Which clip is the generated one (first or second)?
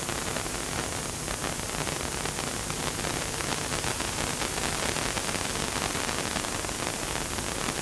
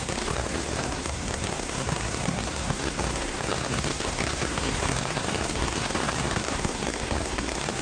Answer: second